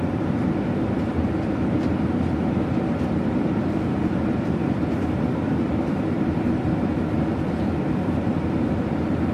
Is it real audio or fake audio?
fake